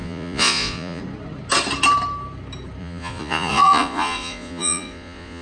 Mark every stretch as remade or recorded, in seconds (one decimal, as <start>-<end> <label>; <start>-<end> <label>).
0.0-1.0 remade; 1.0-2.8 recorded; 2.8-5.4 remade